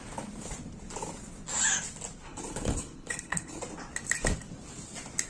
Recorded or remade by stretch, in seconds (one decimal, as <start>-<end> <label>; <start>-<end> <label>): 0.0-2.3 recorded; 2.3-3.6 remade; 3.6-5.3 recorded